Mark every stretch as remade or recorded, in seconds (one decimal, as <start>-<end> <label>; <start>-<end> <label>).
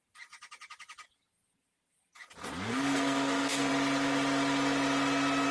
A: 0.0-2.7 recorded; 2.7-3.7 remade; 3.7-5.5 recorded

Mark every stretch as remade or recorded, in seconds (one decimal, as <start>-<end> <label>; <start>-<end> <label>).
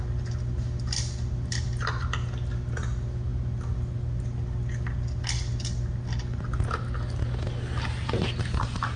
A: 0.0-9.0 recorded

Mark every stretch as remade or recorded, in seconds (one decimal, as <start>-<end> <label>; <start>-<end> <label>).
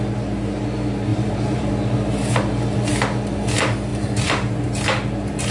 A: 0.0-1.1 recorded; 1.1-1.7 remade; 1.7-3.9 recorded; 3.9-4.5 remade; 4.5-5.5 recorded